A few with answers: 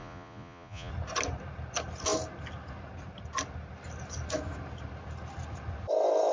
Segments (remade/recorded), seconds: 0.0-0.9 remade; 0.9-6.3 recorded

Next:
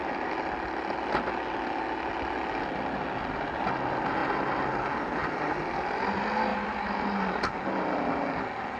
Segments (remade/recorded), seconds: 0.0-8.8 recorded

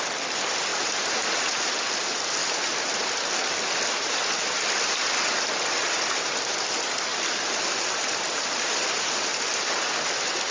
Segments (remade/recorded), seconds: 0.0-0.7 recorded; 0.7-1.9 remade; 1.9-7.1 recorded; 7.1-9.2 remade; 9.2-10.5 recorded

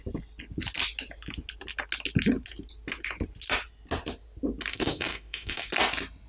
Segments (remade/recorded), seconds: 0.0-4.7 recorded; 4.7-5.7 remade; 5.7-6.3 recorded

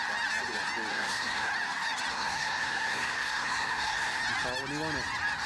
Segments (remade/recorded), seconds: 0.0-0.9 recorded; 0.9-1.5 remade; 1.5-2.1 recorded; 2.1-4.2 remade; 4.2-5.5 recorded

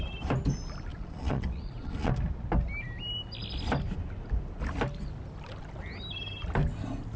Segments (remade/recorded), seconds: 0.0-0.9 recorded; 0.9-2.1 remade; 2.1-7.2 recorded